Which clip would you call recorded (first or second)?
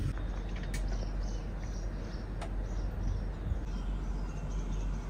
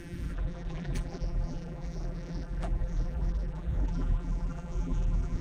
first